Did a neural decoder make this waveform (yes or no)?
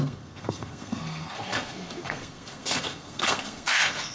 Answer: yes